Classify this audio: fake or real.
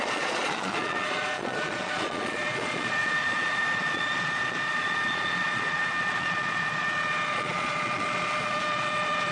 fake